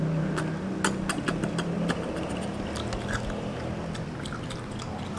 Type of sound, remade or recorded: recorded